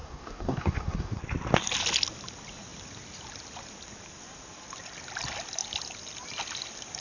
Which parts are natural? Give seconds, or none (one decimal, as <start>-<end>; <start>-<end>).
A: 1.2-7.0